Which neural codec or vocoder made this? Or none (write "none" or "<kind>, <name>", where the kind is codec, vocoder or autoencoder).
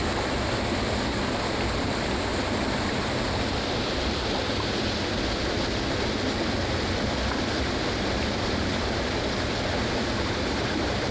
none